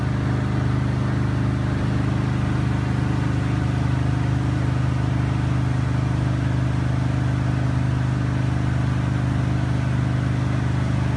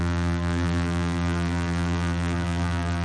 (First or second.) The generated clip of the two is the second